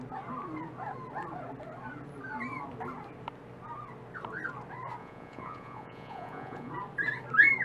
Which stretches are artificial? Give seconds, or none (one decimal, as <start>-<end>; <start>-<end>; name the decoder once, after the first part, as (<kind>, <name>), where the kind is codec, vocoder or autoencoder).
5.0-6.7 (vocoder, Vocos)